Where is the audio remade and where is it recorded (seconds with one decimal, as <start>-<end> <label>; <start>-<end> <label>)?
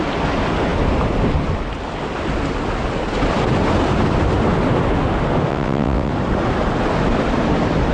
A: 0.0-5.5 recorded; 5.5-6.1 remade; 6.1-7.9 recorded